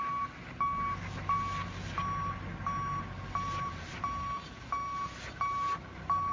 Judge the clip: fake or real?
real